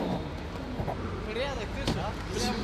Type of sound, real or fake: real